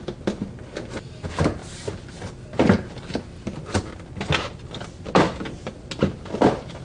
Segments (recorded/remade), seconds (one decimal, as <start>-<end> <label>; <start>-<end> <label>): 0.0-6.8 recorded